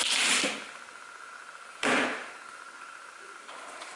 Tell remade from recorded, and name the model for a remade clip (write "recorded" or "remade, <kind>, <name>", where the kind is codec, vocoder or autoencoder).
recorded